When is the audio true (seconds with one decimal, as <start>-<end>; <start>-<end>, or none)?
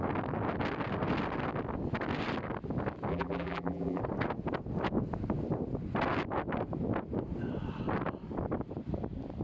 0.0-3.1; 4.0-9.4